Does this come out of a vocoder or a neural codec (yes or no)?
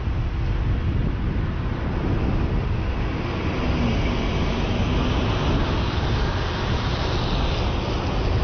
no